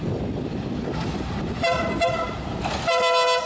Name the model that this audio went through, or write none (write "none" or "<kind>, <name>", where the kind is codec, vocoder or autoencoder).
none